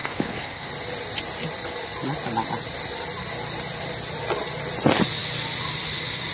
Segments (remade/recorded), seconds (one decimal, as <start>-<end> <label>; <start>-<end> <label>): 0.0-0.7 remade; 0.7-6.3 recorded